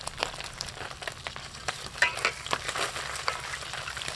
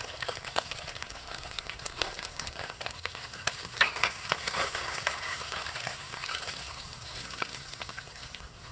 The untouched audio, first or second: first